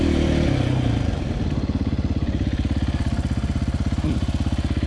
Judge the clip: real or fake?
real